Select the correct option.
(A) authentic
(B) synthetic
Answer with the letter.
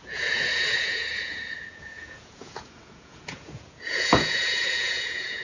B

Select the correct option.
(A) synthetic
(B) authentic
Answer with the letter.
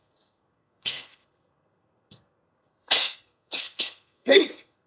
A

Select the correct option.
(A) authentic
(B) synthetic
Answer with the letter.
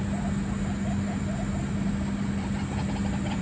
A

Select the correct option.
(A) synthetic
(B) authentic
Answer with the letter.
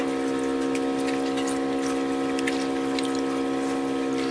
B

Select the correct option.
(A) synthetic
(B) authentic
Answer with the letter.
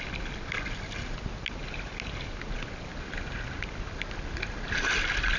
B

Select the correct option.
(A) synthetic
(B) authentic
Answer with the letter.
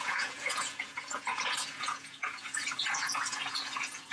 A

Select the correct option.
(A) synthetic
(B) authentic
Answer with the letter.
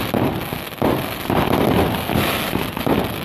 B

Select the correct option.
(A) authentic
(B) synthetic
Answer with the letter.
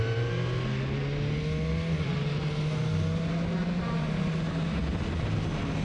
A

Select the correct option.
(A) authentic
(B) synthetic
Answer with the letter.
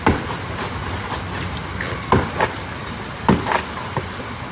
A